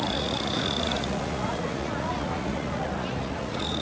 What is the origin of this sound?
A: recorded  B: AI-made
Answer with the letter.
B